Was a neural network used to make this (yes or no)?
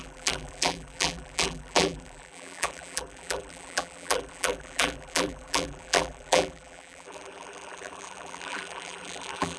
yes